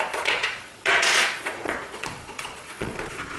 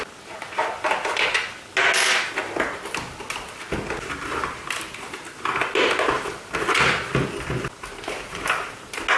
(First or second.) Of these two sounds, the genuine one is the second